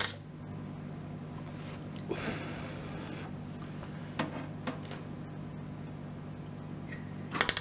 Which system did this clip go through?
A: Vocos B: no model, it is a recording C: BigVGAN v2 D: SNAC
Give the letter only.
B